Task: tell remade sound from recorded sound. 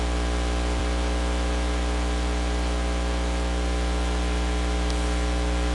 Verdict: recorded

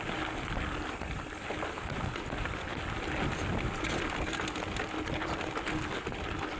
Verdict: recorded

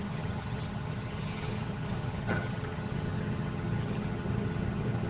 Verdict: remade